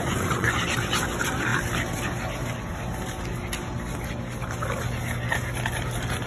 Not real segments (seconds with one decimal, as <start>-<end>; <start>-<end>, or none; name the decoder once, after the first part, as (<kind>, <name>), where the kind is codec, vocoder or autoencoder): 0.0-0.6 (vocoder, Vocos)